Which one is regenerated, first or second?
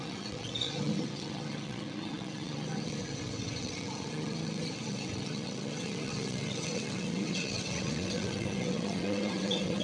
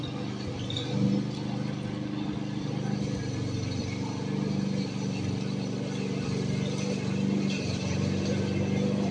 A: first